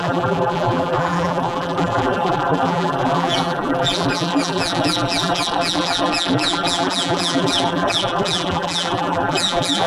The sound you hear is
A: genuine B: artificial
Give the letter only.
B